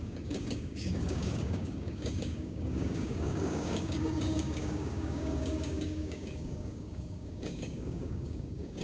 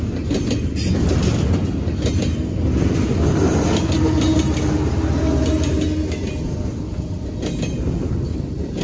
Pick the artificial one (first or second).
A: first